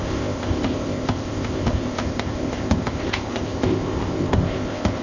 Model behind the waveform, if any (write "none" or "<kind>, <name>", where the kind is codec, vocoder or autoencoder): codec, ZipCodec